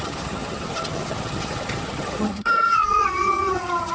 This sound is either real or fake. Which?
fake